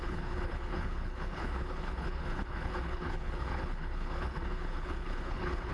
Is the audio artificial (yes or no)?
yes